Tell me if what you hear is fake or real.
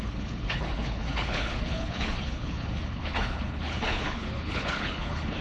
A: fake